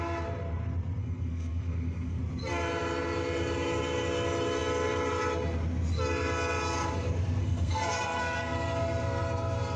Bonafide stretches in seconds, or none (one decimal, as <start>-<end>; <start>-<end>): 0.0-1.0; 2.2-7.4; 8.4-9.8